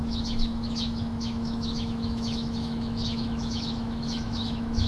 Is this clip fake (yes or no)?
yes